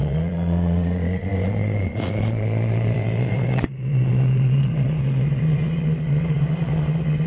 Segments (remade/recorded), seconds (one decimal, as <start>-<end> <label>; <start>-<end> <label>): 0.0-7.3 remade